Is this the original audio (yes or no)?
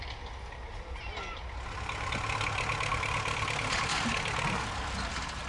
yes